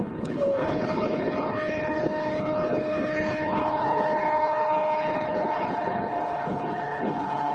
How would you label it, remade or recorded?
remade